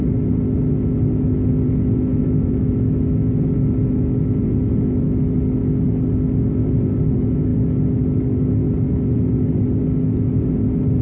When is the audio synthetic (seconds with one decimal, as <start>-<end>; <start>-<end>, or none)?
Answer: 2.1-3.0

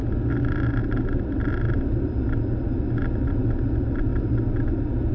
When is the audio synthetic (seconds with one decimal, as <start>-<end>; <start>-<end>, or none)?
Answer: none

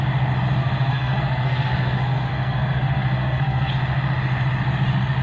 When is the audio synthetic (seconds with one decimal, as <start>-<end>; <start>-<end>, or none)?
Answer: 0.6-3.7

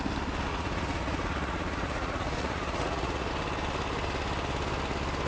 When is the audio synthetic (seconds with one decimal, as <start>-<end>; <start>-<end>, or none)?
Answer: 0.5-3.3

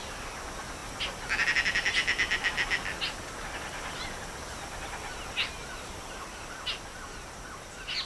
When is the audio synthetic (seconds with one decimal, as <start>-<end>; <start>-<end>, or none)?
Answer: none